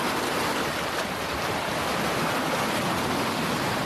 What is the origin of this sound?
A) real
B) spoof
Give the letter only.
A